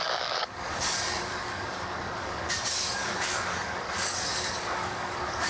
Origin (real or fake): fake